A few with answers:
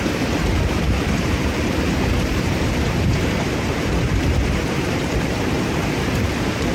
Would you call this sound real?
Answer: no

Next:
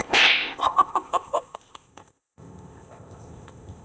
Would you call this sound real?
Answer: no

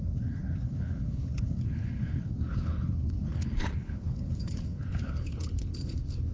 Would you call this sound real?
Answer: no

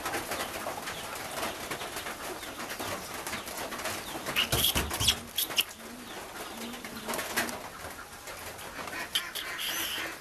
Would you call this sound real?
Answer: yes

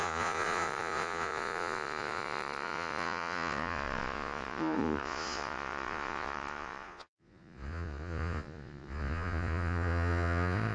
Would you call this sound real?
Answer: no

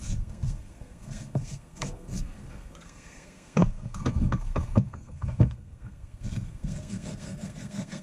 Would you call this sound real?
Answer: no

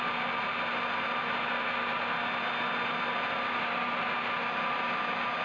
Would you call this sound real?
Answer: yes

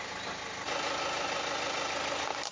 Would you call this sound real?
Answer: yes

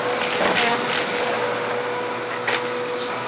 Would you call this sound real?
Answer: yes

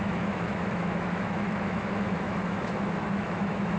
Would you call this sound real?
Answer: no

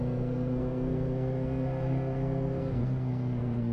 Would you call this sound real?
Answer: no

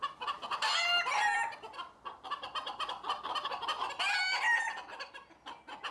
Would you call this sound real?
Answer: yes